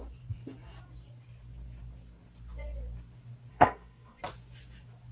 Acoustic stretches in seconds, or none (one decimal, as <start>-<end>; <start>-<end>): 0.0-3.5; 4.2-5.1